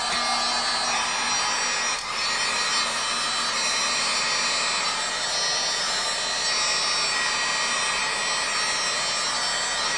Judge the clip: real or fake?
real